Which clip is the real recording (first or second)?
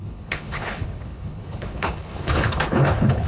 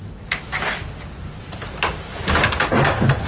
second